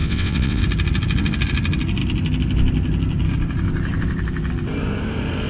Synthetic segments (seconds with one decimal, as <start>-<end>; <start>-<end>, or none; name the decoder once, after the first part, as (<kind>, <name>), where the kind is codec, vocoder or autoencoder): 0.0-0.6 (vocoder, WaveNeXt)